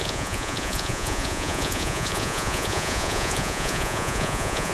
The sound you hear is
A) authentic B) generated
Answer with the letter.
B